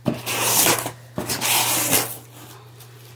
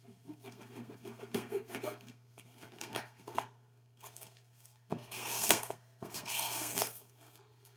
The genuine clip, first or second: first